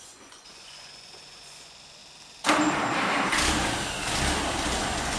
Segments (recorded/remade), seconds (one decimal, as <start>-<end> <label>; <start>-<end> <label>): 0.0-2.0 remade; 2.0-4.8 recorded; 4.8-5.2 remade